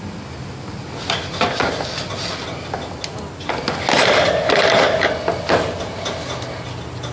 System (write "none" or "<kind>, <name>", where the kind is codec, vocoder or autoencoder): none